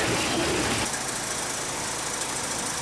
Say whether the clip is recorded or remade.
recorded